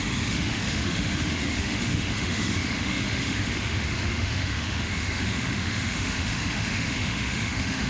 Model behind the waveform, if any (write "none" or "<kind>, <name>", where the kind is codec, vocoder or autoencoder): autoencoder, DAC-VAE